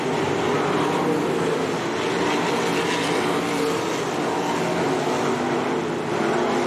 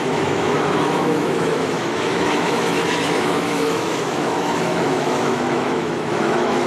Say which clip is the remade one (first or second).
second